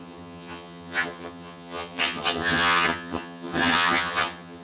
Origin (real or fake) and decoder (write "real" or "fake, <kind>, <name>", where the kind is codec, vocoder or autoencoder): fake, vocoder, HiFi-GAN